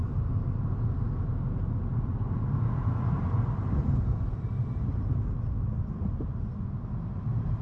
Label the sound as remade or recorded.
recorded